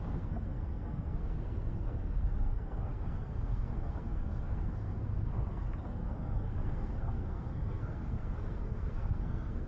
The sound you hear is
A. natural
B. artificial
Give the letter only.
B